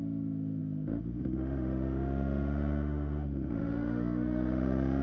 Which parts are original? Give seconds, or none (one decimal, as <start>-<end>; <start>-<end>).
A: none